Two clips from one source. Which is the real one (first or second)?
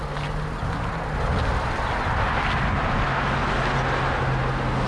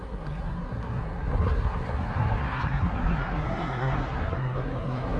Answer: first